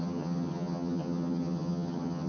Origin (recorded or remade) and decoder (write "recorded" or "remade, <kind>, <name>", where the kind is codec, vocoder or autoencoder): remade, vocoder, HiFi-GAN